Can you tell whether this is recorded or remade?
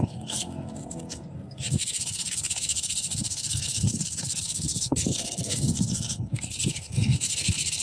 remade